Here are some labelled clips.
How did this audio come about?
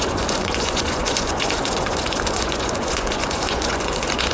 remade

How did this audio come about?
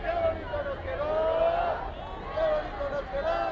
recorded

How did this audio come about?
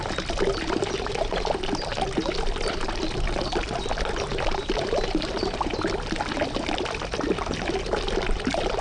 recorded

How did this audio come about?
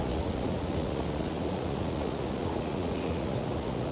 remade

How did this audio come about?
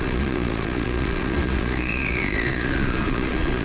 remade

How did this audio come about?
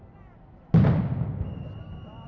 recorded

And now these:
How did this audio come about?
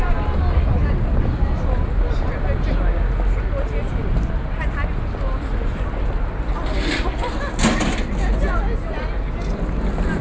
recorded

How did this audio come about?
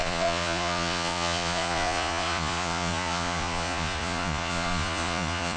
remade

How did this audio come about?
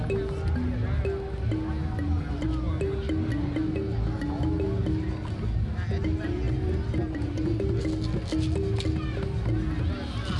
recorded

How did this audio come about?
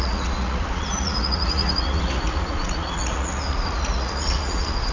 remade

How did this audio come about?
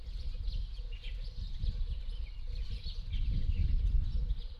recorded